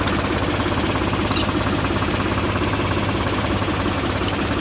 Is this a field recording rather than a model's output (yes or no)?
no